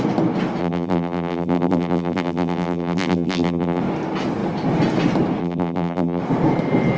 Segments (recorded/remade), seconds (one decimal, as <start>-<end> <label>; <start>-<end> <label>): 0.0-0.6 recorded; 0.6-3.8 remade; 3.8-5.4 recorded; 5.4-6.2 remade; 6.2-7.0 recorded

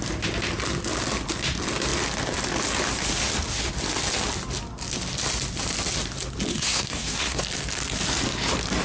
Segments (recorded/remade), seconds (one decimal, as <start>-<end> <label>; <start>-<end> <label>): 0.0-6.5 recorded; 6.5-7.4 remade; 7.4-8.8 recorded

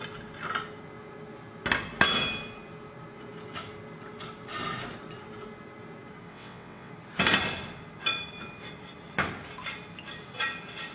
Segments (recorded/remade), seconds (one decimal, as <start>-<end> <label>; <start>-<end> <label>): 0.0-6.3 recorded; 6.3-6.9 remade; 6.9-10.9 recorded

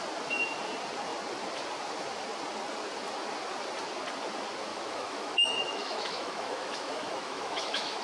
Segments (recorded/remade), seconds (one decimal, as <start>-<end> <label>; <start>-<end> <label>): 0.0-4.7 recorded; 4.7-8.0 remade

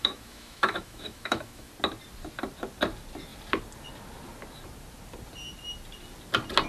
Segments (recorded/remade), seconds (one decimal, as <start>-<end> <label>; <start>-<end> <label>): 0.0-1.7 remade; 1.7-6.7 recorded

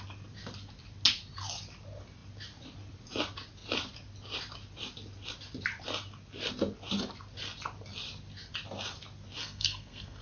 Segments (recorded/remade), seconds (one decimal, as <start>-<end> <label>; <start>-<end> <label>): 0.0-9.4 recorded; 9.4-10.2 remade

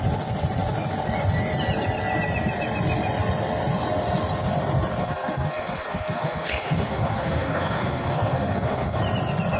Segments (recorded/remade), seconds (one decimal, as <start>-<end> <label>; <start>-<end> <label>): 0.0-5.0 recorded; 5.0-9.0 remade; 9.0-9.6 recorded

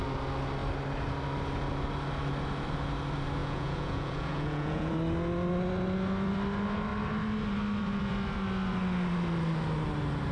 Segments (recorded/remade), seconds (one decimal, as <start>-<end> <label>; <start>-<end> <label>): 0.0-3.4 recorded; 3.4-4.9 remade; 4.9-10.3 recorded